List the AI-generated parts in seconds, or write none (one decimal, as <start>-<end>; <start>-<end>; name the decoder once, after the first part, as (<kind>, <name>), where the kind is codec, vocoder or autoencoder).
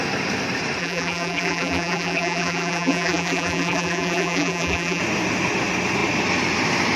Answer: 0.8-5.0 (vocoder, BigVGAN v2)